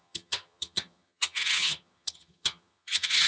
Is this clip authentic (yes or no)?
no